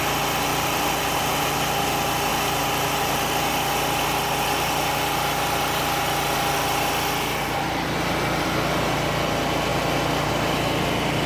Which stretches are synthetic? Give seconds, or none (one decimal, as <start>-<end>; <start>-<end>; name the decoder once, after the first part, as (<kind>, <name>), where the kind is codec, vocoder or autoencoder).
0.5-1.4 (vocoder, BigVGAN v2)